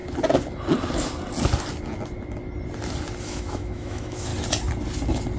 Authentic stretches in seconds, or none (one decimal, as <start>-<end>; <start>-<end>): 0.0-3.2; 4.3-5.4